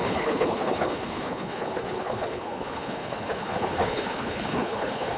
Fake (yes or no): yes